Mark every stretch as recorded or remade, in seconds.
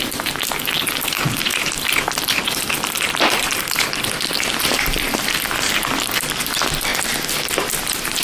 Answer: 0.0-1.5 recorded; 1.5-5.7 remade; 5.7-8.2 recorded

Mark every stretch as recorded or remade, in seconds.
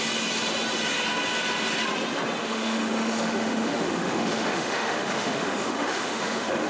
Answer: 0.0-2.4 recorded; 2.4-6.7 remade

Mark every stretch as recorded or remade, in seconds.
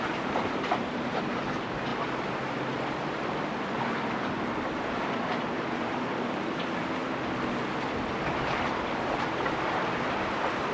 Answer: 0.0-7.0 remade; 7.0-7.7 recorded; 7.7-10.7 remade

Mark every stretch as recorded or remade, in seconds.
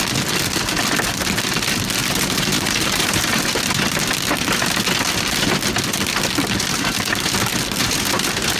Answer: 0.0-2.0 recorded; 2.0-3.4 remade; 3.4-7.8 recorded; 7.8-8.6 remade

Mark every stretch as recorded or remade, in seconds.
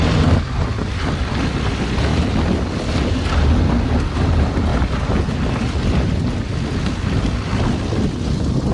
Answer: 0.0-8.7 recorded